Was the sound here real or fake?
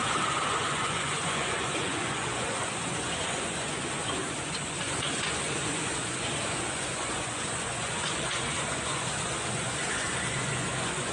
fake